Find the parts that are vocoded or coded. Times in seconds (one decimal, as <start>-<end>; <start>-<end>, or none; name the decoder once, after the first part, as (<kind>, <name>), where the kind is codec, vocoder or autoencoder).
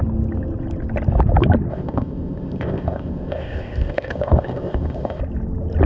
1.7-5.2 (codec, ZipCodec)